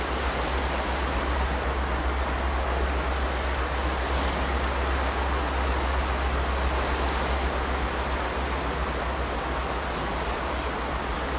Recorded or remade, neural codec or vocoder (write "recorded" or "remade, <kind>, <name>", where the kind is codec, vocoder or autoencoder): recorded